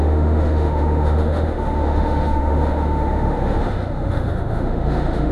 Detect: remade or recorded remade